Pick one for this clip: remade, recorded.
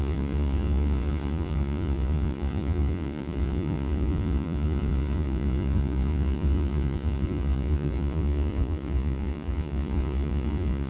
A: remade